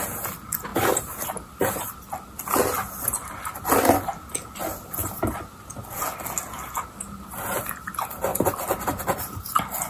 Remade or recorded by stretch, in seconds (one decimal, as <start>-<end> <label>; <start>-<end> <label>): 0.0-0.7 recorded; 0.7-1.6 remade; 1.6-8.3 recorded; 8.3-9.4 remade; 9.4-9.9 recorded